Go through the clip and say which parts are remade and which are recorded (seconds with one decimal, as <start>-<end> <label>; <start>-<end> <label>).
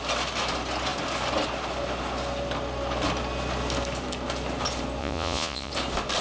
0.0-5.0 recorded; 5.0-5.7 remade; 5.7-6.2 recorded